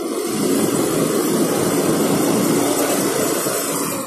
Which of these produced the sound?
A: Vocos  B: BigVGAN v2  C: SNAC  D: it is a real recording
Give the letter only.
D